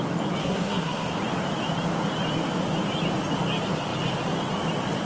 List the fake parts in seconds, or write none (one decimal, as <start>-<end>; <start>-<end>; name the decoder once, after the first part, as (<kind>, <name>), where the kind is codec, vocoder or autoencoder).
0.4-1.1 (codec, SNAC)